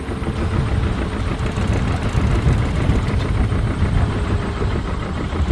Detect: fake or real real